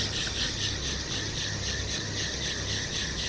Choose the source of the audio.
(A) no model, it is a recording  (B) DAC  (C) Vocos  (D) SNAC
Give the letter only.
A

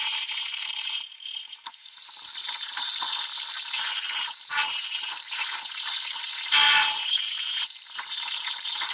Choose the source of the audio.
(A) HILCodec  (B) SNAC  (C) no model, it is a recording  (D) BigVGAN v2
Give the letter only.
D